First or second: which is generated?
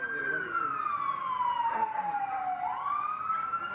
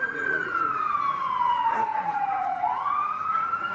second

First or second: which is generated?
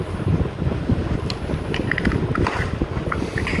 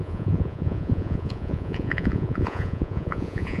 second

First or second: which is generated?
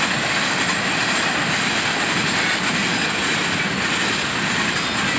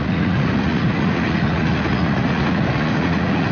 second